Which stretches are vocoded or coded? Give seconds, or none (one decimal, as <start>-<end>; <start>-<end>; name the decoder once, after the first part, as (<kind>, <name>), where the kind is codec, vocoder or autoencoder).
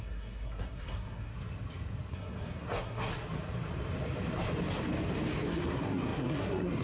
0.0-1.3 (codec, SNAC); 2.1-3.1; 5.5-6.8